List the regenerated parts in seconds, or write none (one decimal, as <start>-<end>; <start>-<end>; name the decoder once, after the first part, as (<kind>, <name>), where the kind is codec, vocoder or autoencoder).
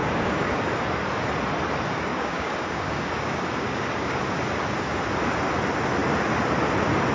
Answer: 0.0-0.6 (codec, DAC); 2.1-4.2